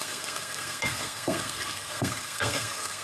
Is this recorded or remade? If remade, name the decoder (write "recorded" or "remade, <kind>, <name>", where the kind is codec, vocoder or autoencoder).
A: remade, codec, SNAC